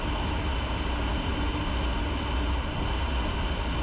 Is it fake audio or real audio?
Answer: real